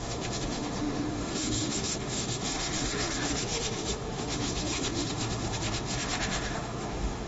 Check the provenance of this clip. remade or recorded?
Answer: remade